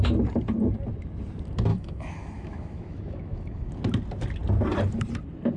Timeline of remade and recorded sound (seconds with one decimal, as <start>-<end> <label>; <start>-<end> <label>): 0.0-1.7 recorded; 1.7-3.7 remade; 3.7-5.6 recorded